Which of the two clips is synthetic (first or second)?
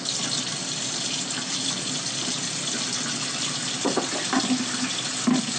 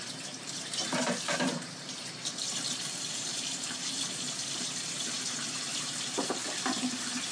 second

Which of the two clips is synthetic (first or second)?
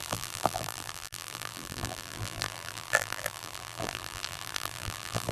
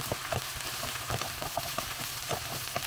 first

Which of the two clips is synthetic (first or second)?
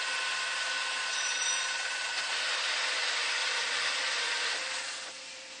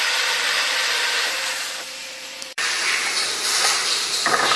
second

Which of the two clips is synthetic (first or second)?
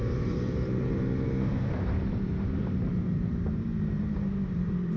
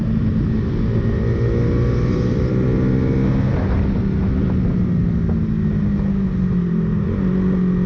first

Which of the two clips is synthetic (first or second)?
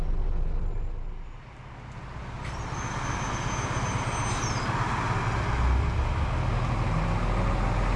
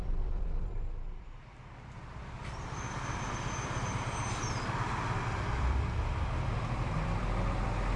second